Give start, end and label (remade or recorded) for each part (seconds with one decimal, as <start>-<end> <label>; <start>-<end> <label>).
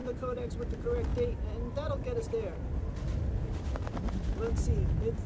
0.0-0.5 remade; 0.5-5.3 recorded